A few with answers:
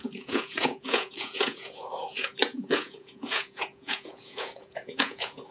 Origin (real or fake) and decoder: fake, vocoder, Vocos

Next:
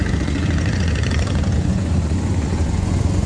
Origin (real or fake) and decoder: fake, vocoder, Vocos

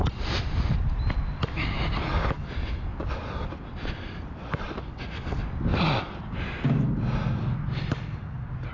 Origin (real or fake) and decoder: real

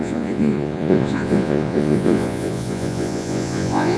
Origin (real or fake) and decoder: fake, vocoder, Vocos